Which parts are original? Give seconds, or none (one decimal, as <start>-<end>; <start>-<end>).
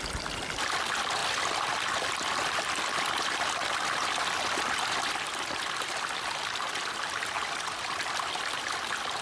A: 0.0-7.4; 8.6-9.2